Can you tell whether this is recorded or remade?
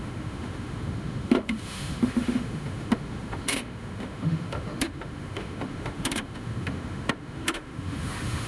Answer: remade